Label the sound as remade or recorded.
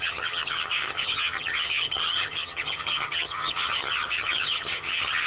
remade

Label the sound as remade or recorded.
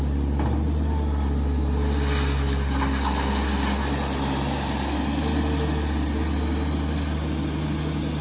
recorded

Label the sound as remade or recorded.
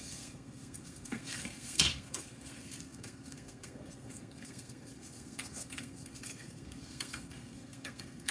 remade